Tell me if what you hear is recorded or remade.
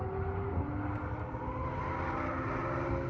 recorded